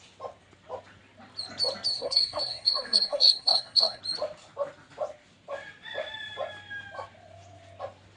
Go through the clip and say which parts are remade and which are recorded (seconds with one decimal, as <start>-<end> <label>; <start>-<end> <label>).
0.0-1.9 recorded; 1.9-4.0 remade; 4.0-8.2 recorded